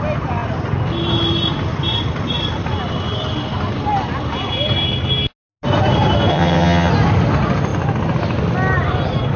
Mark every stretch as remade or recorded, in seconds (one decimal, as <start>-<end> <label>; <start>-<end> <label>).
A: 0.0-6.3 recorded; 6.3-6.9 remade; 6.9-9.4 recorded